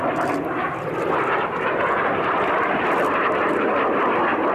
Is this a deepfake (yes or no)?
no